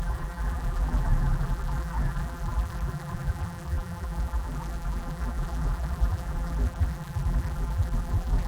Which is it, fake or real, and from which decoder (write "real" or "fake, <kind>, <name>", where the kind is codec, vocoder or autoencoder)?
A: fake, vocoder, BigVGAN v2